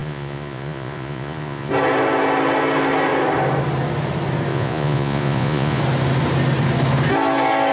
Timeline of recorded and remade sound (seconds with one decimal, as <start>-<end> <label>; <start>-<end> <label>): 0.0-1.7 remade; 1.7-4.5 recorded; 4.5-5.8 remade; 5.8-7.7 recorded